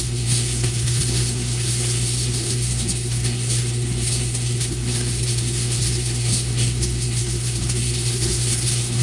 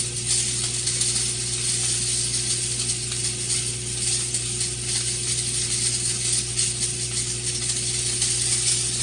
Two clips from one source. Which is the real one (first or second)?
second